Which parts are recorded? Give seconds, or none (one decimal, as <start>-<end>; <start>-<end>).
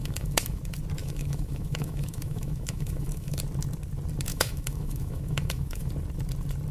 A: 0.6-1.0; 3.4-4.3; 5.9-6.7